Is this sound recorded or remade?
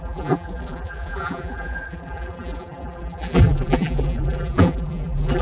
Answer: remade